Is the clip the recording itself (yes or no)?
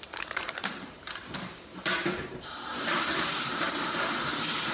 no